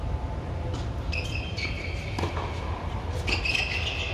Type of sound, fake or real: real